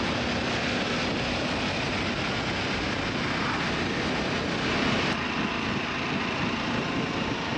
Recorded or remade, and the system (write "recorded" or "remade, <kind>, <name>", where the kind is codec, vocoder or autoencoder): recorded